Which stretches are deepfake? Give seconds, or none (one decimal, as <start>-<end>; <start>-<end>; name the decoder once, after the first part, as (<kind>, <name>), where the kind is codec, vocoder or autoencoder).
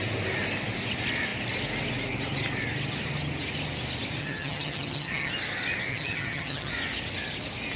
4.2-5.3 (vocoder, HiFi-GAN); 5.9-6.7